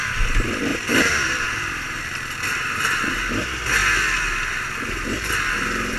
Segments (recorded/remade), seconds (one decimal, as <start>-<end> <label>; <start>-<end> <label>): 0.0-0.7 recorded; 0.7-2.0 remade; 2.0-6.0 recorded